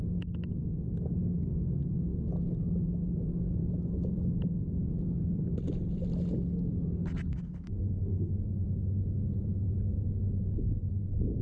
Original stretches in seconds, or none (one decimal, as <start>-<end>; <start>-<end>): 0.0-1.2; 1.7-7.3; 8.3-11.4